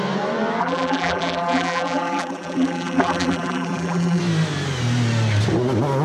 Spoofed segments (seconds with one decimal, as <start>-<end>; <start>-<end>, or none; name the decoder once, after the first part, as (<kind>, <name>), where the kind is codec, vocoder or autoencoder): 0.6-4.2 (vocoder, BigVGAN v2)